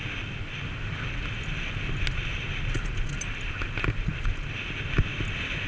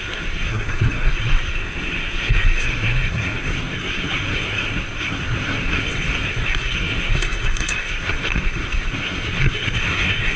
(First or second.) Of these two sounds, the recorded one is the first